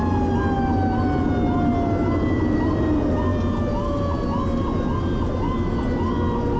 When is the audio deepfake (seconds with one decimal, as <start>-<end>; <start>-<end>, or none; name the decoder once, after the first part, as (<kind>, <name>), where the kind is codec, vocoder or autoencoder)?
none